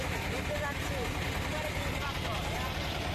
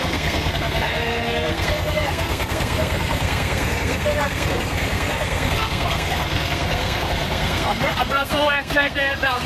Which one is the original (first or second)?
first